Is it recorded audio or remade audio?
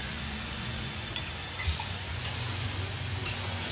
remade